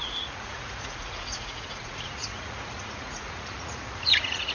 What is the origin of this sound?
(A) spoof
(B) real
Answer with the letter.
A